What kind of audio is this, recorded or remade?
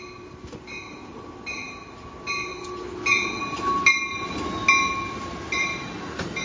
recorded